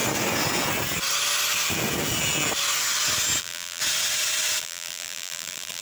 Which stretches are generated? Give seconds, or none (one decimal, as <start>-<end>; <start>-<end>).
3.4-3.8; 4.6-5.8